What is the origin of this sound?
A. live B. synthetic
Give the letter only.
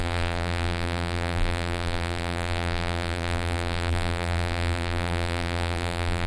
B